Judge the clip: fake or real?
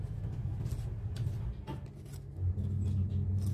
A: real